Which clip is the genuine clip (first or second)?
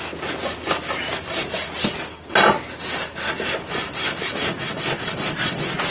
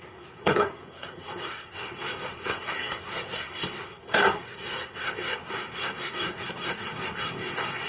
first